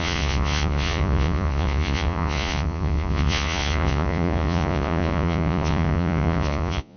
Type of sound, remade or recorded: remade